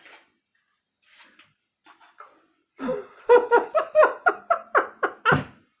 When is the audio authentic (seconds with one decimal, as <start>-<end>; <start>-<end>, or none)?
0.0-5.8